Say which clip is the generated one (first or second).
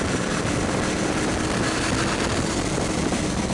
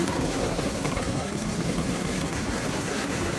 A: second